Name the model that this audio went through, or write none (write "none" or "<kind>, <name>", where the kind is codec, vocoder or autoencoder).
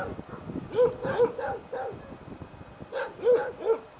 none